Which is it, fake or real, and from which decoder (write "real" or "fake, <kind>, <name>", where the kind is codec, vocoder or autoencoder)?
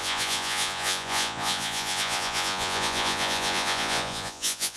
fake, vocoder, Vocos